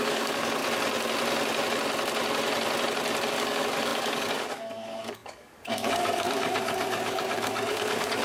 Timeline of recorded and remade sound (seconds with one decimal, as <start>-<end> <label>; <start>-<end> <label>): 0.0-0.6 remade; 0.6-3.3 recorded; 3.3-8.2 remade